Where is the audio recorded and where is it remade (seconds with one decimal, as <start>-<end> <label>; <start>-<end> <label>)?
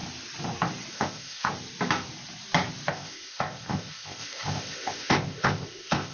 0.0-0.9 recorded; 0.9-1.5 remade; 1.5-2.9 recorded; 2.9-6.1 remade